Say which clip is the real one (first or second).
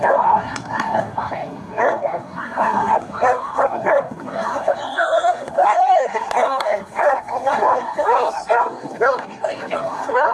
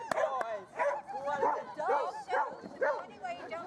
second